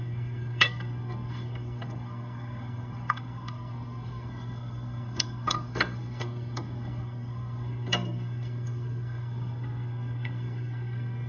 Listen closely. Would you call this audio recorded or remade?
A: remade